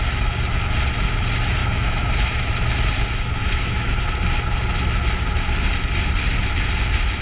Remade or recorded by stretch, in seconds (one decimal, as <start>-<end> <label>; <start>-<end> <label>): 0.0-1.6 recorded; 1.6-2.5 remade; 2.5-3.4 recorded; 3.4-4.0 remade; 4.0-7.2 recorded